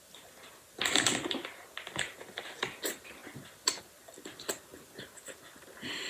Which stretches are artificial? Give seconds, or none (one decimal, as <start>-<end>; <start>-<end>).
none